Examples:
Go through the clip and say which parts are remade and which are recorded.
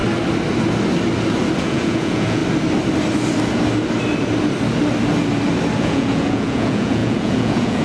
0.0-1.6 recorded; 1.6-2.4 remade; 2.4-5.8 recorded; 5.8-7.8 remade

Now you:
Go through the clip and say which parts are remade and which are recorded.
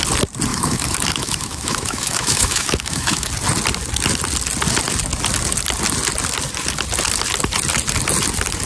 0.0-0.5 recorded; 0.5-3.3 remade; 3.3-8.7 recorded